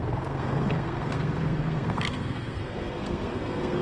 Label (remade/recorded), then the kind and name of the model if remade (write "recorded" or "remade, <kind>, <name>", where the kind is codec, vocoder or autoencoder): remade, codec, SNAC